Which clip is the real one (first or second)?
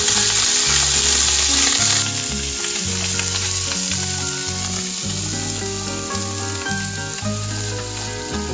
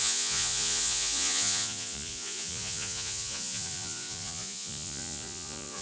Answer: first